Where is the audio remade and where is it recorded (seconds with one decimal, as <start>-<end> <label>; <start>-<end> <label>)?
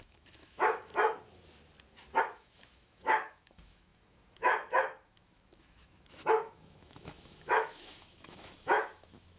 0.0-0.9 remade; 0.9-2.2 recorded; 2.2-9.4 remade